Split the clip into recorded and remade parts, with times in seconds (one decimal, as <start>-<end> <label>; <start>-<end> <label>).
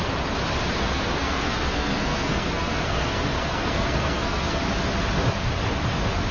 0.0-0.8 recorded; 0.8-4.6 remade; 4.6-6.3 recorded